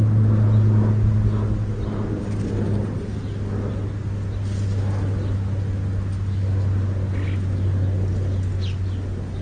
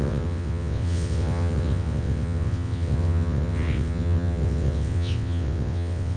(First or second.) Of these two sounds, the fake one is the second